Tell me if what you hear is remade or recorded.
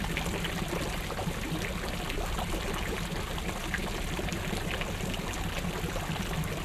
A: recorded